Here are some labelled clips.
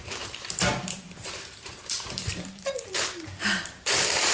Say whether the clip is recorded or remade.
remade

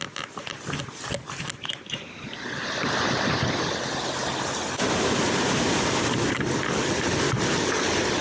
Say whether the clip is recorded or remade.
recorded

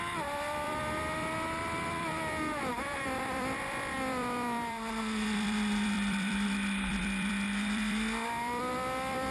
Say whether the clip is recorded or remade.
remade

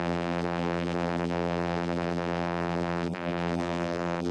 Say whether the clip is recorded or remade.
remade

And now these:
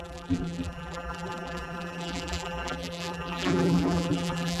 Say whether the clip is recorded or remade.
remade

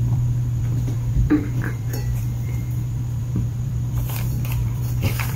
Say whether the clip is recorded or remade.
remade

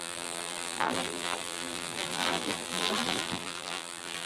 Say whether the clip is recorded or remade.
remade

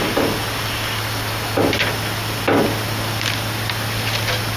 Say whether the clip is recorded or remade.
recorded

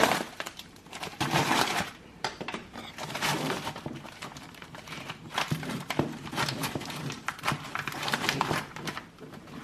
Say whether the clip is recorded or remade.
remade